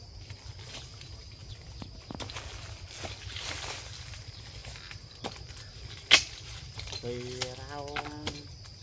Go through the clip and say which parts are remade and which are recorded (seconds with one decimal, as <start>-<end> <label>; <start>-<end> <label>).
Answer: 0.0-8.8 recorded